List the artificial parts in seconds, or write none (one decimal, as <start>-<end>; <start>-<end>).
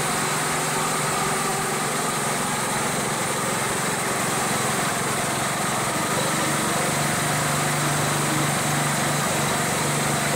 1.5-4.2; 4.9-6.1